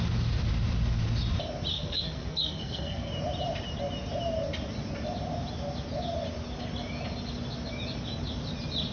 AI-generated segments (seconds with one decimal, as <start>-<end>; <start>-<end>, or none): 1.7-3.1